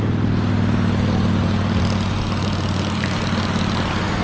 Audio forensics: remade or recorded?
recorded